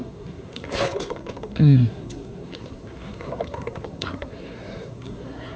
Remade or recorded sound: remade